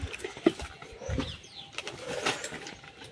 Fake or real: real